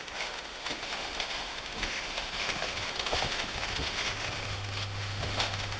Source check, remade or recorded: remade